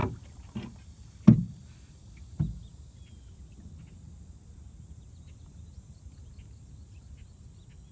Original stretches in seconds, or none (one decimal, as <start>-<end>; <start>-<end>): 0.0-7.9

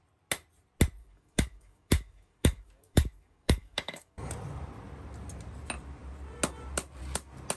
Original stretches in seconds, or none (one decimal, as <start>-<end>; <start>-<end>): 0.0-1.0; 4.3-7.6

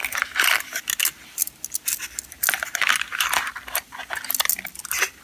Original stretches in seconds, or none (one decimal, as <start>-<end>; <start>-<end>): 0.0-5.2

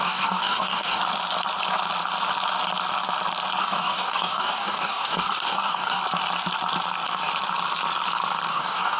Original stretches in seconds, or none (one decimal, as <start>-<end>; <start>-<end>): 1.0-3.6; 6.0-8.5